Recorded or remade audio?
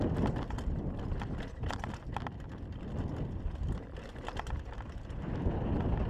recorded